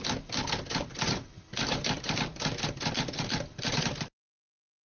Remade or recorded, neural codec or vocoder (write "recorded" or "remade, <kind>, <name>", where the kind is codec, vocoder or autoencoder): recorded